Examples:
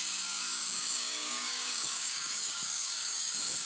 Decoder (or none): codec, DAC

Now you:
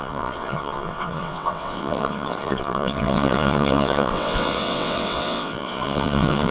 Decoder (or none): vocoder, WaveNeXt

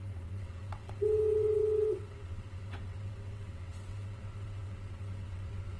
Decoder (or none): vocoder, WaveNeXt